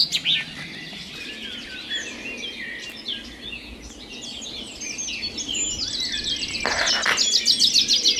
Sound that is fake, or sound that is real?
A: real